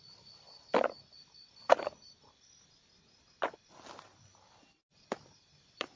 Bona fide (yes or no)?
yes